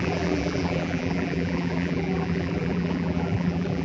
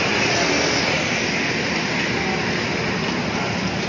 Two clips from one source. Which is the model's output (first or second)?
first